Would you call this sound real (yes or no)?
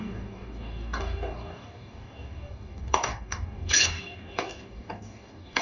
no